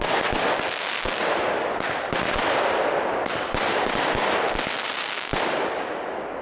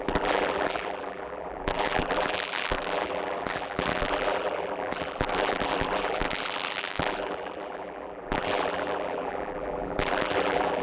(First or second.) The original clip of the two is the first